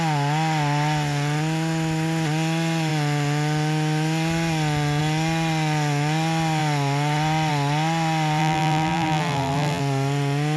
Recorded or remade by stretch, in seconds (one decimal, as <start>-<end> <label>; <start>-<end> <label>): 0.0-8.4 recorded; 8.4-9.8 remade; 9.8-10.6 recorded